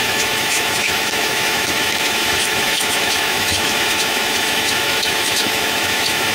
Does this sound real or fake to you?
fake